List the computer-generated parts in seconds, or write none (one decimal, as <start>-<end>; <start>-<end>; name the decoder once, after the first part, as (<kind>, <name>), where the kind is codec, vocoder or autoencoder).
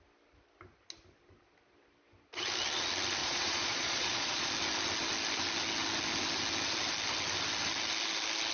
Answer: 3.2-4.5 (vocoder, Vocos)